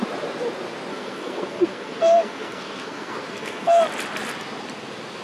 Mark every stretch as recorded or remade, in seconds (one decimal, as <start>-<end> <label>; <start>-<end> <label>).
0.0-0.9 recorded; 0.9-3.8 remade; 3.8-5.2 recorded